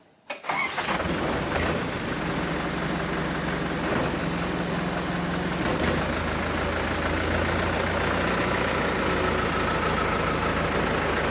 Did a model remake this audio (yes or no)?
no